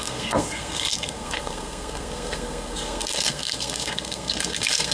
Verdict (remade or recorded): remade